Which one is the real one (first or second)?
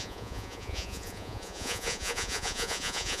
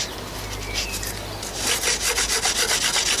second